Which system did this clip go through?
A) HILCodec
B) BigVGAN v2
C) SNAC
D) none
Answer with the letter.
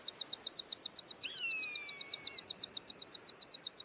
D